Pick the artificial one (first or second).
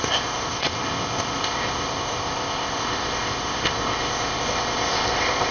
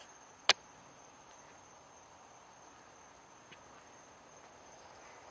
first